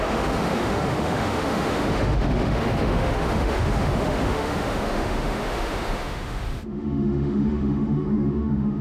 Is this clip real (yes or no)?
no